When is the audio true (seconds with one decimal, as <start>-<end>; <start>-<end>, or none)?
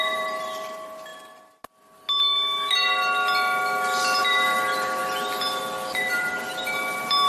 1.1-4.2